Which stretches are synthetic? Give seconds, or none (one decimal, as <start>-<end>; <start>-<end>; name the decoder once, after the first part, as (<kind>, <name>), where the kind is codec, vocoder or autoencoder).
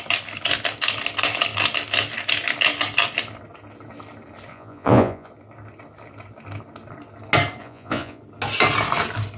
4.5-5.3 (vocoder, Vocos); 7.6-8.2